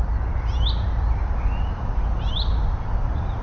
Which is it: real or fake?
real